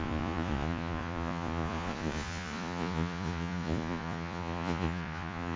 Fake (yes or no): yes